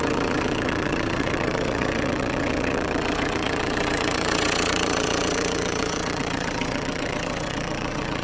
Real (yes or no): no